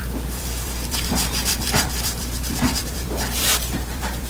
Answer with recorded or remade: remade